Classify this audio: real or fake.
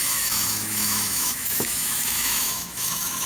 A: fake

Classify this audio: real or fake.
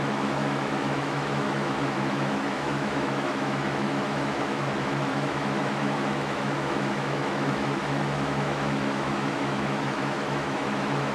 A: fake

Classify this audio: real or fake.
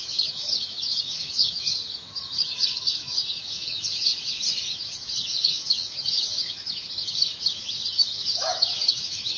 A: fake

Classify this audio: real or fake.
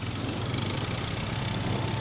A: real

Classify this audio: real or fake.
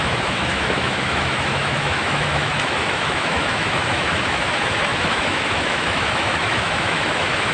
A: fake